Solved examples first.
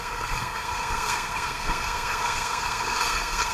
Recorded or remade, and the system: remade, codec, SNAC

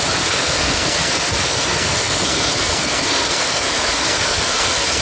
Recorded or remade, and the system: remade, codec, SNAC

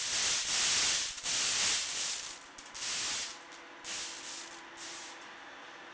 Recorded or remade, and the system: recorded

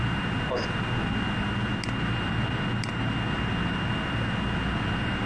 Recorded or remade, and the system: recorded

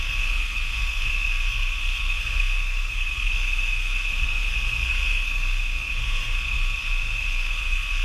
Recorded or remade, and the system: remade, codec, SNAC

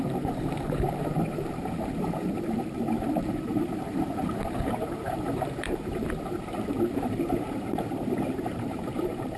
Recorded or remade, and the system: remade, vocoder, BigVGAN v2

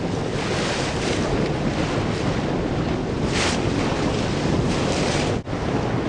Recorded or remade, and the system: recorded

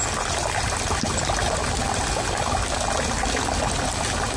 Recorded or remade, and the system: recorded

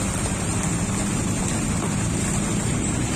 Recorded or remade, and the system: recorded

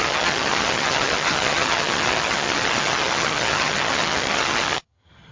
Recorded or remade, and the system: remade, vocoder, HiFi-GAN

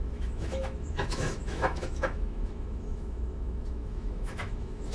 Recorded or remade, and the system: remade, autoencoder, DAC-VAE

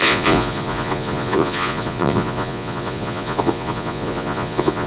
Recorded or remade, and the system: remade, vocoder, Vocos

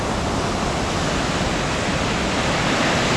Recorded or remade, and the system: recorded